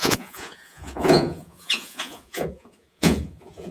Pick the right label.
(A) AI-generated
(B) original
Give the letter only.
A